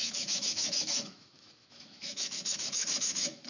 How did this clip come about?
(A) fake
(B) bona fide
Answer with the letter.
A